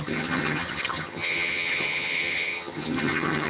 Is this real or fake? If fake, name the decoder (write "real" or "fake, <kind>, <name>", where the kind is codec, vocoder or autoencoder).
fake, vocoder, HiFi-GAN